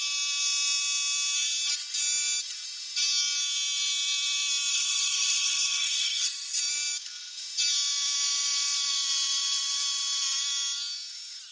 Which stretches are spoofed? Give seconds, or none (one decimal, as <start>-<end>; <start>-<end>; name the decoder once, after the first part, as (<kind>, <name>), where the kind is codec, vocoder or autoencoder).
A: 4.7-6.6 (codec, SNAC)